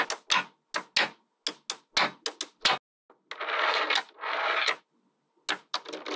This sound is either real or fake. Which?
real